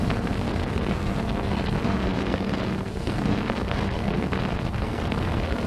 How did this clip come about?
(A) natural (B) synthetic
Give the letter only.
B